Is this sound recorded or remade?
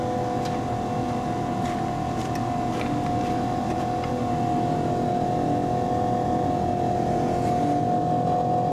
recorded